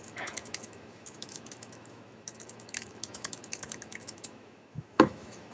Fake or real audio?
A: fake